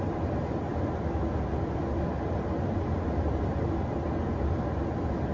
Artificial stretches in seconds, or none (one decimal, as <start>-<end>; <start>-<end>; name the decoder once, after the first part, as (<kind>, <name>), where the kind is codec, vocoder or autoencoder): none